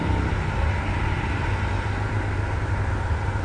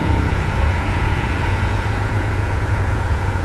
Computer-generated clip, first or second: second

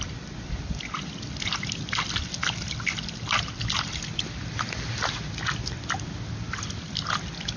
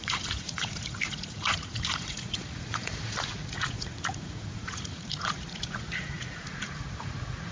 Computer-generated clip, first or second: second